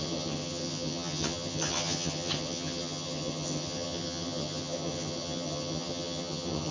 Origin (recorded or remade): remade